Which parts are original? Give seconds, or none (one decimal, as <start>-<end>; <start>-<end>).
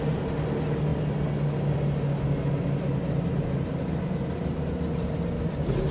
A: 0.0-5.9